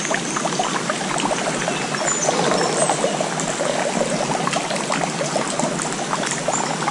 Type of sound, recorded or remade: recorded